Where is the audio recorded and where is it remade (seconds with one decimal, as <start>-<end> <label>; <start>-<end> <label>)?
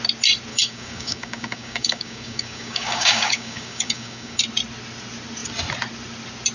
0.0-0.5 recorded; 0.5-4.4 remade; 4.4-6.5 recorded